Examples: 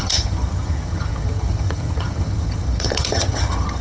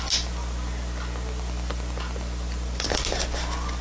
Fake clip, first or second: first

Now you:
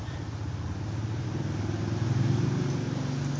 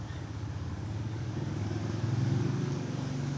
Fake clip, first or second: second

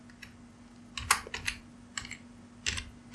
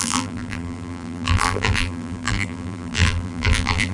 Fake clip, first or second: second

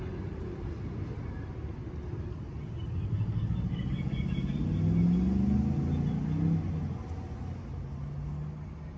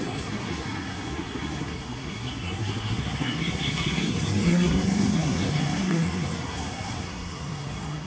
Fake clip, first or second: second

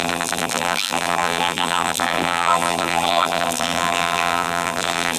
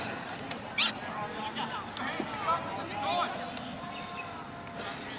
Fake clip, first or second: first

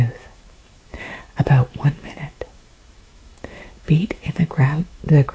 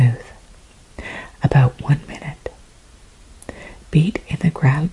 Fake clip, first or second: first